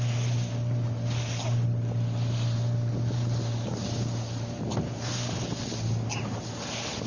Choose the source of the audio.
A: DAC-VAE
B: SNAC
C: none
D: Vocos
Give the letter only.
C